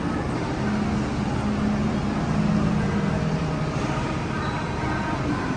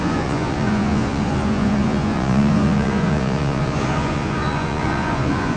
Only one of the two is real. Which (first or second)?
first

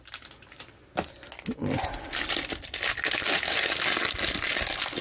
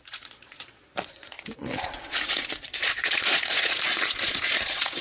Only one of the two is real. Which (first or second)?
first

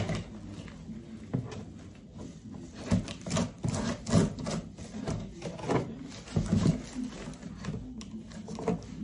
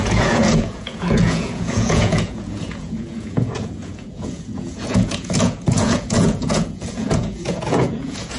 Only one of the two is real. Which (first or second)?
first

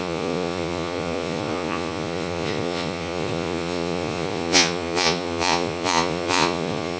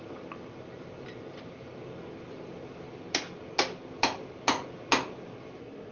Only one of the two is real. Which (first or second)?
second